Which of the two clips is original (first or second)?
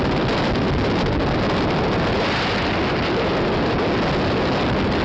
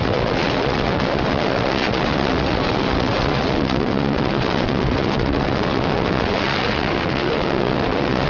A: first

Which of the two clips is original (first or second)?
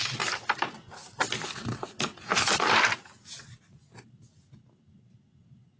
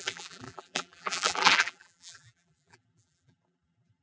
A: first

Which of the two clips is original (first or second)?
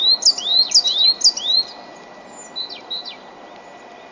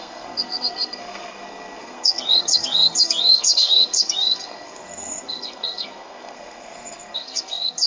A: first